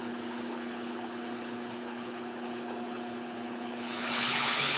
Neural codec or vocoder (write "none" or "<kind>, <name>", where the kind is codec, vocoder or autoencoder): codec, HILCodec